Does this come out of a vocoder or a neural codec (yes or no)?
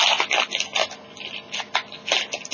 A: no